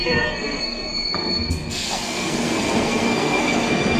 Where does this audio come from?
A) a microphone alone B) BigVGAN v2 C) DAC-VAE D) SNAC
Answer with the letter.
D